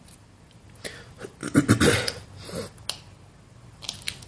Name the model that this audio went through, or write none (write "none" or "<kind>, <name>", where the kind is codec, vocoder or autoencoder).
none